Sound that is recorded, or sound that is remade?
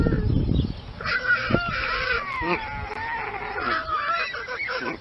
recorded